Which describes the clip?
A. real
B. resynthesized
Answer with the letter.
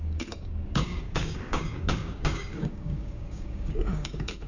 B